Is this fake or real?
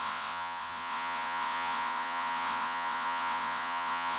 fake